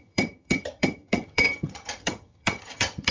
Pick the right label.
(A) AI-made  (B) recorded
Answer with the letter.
A